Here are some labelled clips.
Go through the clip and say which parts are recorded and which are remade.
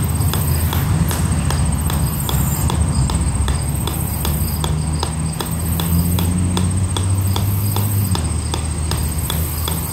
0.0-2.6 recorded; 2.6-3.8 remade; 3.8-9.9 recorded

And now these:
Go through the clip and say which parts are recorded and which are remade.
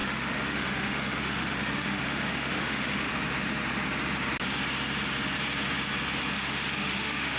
0.0-3.1 remade; 3.1-6.3 recorded; 6.3-7.4 remade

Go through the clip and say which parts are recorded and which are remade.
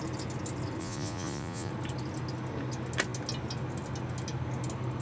0.0-0.8 recorded; 0.8-1.7 remade; 1.7-5.0 recorded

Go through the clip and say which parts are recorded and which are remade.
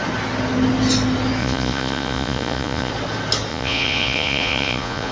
0.0-1.4 recorded; 1.4-2.9 remade; 2.9-3.5 recorded; 3.5-5.1 remade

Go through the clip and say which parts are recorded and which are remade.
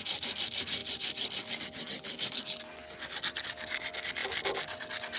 0.0-5.2 recorded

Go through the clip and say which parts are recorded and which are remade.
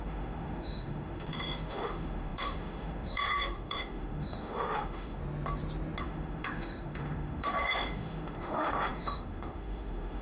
0.0-5.2 remade; 5.2-6.0 recorded; 6.0-10.2 remade